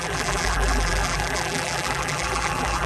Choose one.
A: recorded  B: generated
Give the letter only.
B